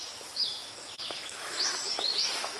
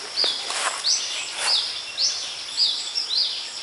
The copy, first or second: first